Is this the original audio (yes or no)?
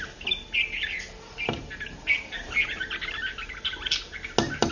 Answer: yes